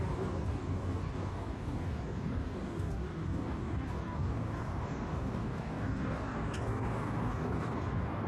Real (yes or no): no